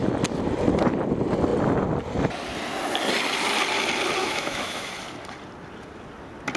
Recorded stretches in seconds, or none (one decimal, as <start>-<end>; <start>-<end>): 0.0-4.2; 4.9-6.6